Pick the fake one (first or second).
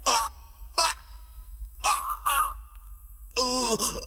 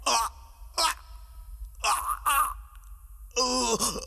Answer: first